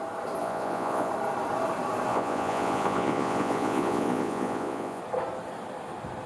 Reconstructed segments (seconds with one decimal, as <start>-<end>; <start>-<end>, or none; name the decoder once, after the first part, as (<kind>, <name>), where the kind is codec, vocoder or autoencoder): 0.4-1.1 (vocoder, Vocos); 2.1-5.0